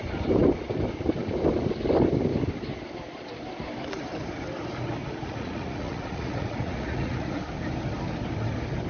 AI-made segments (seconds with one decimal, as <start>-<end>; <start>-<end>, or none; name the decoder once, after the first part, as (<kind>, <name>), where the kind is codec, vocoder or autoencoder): 5.0-7.4 (vocoder, Vocos)